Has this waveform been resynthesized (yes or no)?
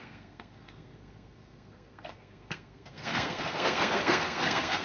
yes